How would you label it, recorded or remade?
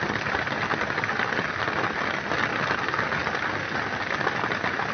recorded